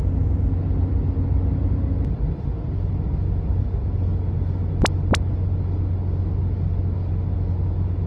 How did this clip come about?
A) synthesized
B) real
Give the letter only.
B